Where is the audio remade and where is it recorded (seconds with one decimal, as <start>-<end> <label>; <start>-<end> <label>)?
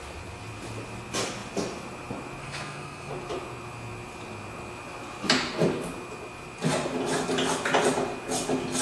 0.0-2.4 recorded; 2.4-3.1 remade; 3.1-8.8 recorded